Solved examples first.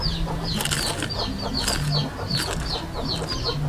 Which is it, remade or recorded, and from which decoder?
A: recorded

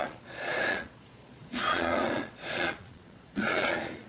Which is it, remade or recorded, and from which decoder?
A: remade, vocoder, Vocos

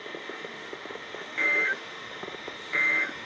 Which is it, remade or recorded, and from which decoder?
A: remade, autoencoder, DAC-VAE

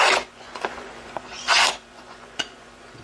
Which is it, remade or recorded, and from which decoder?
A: remade, vocoder, Vocos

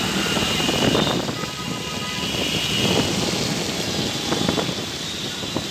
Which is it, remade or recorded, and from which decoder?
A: recorded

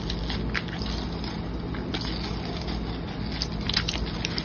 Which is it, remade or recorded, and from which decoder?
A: recorded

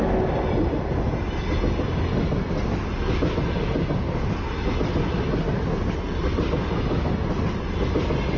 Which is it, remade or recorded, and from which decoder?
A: recorded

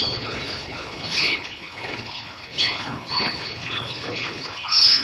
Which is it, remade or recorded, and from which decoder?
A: remade, codec, HILCodec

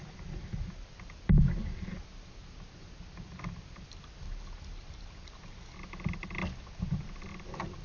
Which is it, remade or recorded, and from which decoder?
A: recorded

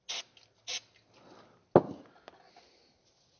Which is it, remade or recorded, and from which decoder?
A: recorded